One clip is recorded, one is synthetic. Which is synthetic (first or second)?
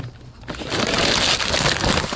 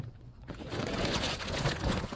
second